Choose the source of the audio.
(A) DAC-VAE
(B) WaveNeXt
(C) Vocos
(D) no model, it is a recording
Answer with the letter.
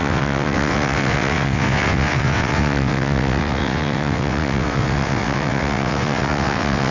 B